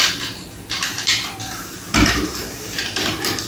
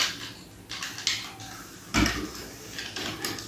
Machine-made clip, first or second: first